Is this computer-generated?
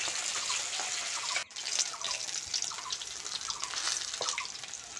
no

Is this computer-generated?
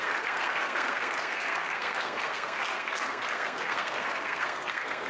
yes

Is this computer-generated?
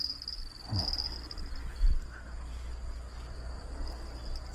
no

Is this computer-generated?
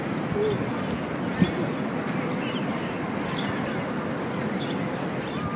no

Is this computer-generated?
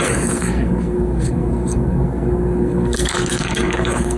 yes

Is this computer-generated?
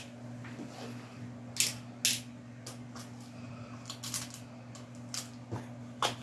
no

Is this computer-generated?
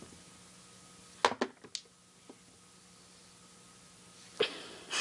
no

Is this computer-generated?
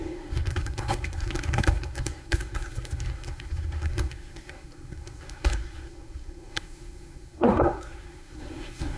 yes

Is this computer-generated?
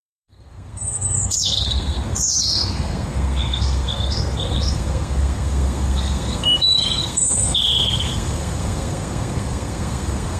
yes